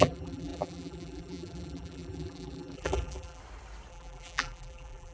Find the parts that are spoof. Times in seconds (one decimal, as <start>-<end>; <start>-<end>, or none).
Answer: 0.0-3.4; 3.9-5.1